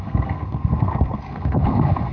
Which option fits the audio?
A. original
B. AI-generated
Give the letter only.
B